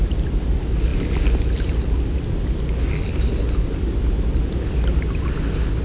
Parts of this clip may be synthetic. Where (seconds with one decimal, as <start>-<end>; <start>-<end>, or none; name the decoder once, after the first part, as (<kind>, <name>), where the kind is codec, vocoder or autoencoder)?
none